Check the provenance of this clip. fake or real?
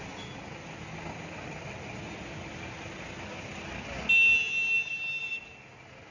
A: real